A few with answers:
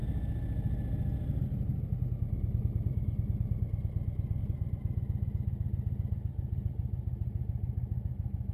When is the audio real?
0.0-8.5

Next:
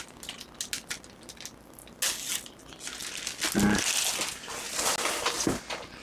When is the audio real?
0.0-6.0

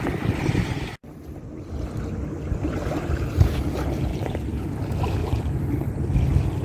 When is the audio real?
0.0-4.1; 4.7-5.2; 5.9-6.6

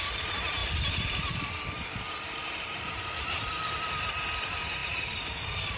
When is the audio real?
none

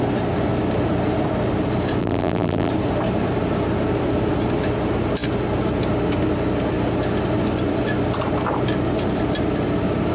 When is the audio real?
0.0-2.0; 2.7-10.1